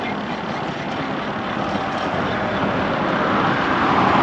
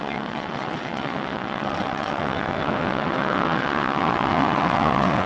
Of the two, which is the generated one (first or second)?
second